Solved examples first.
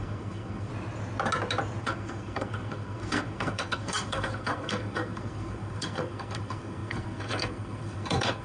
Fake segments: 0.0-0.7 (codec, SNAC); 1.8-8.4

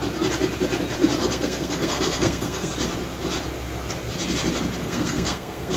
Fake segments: 1.2-2.7 (codec, SNAC); 4.8-5.8

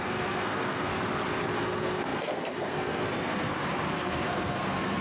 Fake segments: 0.0-0.9 (codec, SNAC); 1.6-3.5; 4.1-5.0